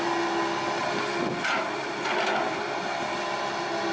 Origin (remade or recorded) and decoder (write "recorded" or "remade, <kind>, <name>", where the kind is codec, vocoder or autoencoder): recorded